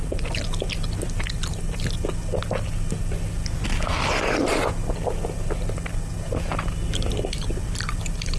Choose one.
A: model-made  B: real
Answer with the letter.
B